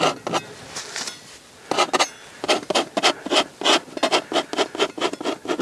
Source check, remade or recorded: recorded